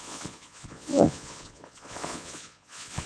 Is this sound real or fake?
fake